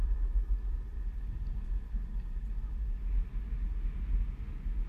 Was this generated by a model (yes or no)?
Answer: no